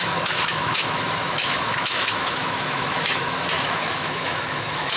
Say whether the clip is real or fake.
fake